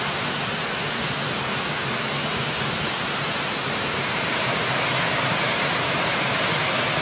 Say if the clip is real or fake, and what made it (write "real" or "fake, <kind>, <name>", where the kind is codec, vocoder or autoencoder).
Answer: real